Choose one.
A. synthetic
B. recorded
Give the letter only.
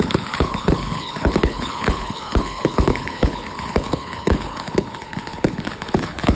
A